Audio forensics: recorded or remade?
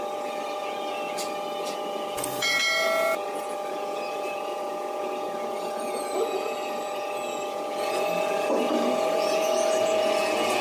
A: remade